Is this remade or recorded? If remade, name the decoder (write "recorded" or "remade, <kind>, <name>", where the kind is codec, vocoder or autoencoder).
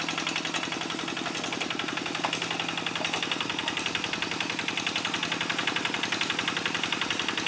recorded